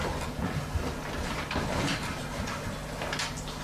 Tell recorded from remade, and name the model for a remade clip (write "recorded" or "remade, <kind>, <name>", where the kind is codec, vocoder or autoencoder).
recorded